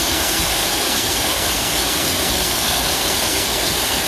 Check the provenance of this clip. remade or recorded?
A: remade